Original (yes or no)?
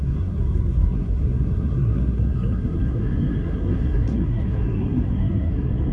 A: no